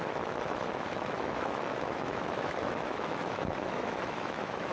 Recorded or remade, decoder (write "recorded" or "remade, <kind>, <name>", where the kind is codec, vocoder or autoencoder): remade, autoencoder, DAC-VAE